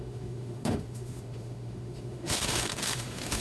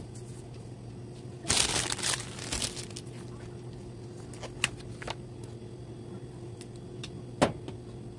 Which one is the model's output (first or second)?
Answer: first